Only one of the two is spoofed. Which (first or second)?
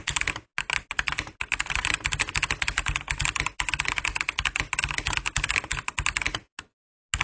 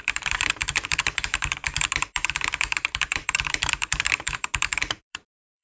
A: second